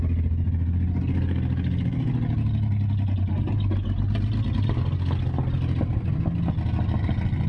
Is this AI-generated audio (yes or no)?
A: no